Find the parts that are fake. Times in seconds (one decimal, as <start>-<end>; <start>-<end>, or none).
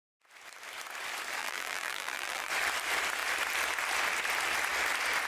1.4-2.5